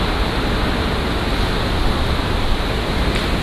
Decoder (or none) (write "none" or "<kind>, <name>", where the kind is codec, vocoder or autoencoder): none